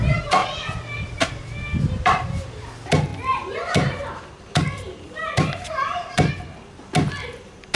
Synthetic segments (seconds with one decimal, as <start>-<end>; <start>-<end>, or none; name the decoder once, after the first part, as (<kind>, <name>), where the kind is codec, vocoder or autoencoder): 3.1-6.3 (vocoder, BigVGAN v2)